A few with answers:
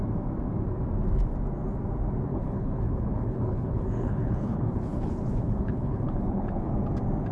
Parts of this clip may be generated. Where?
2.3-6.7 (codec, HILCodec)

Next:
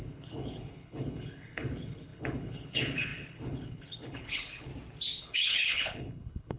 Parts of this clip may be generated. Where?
0.0-4.7 (codec, HILCodec); 5.2-6.6

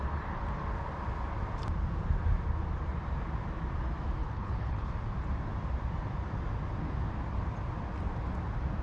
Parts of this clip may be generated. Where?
4.2-4.9 (codec, HILCodec)

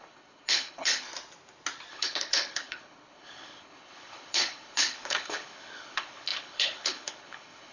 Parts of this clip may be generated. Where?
0.0-1.1 (codec, HILCodec); 1.9-7.7

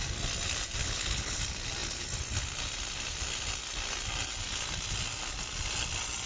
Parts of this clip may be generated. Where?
0.8-1.4 (codec, HILCodec)

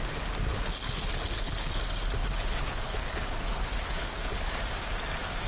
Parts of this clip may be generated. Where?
0.5-1.8 (codec, HILCodec); 2.2-4.5